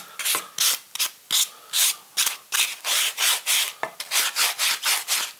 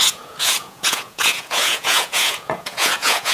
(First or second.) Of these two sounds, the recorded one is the first